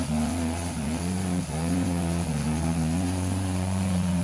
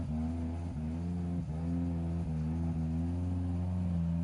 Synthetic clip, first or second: first